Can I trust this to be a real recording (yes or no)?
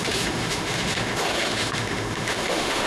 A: no